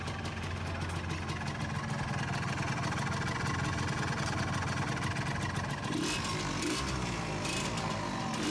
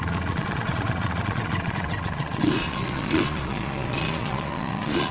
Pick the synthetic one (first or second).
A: second